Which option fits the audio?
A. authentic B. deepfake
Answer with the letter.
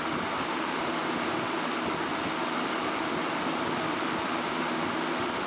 A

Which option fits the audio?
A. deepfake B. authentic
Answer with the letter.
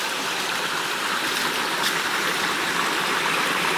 B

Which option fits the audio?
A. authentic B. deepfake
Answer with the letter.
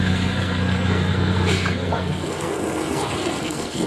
B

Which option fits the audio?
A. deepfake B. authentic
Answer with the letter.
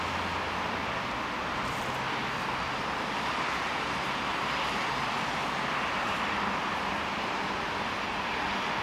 B